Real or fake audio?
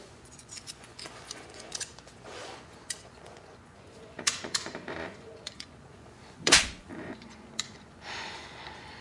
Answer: fake